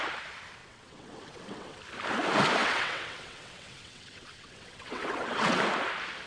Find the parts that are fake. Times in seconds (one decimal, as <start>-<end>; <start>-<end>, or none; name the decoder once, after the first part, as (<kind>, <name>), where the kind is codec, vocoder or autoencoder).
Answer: 0.6-1.8 (vocoder, WaveNeXt); 2.6-5.6